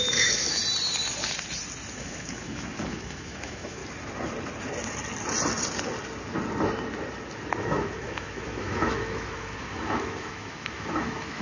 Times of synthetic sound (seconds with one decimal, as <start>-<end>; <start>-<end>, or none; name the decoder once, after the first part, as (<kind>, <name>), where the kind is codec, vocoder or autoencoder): 0.0-0.6 (autoencoder, DAC-VAE); 1.9-3.8; 7.6-11.4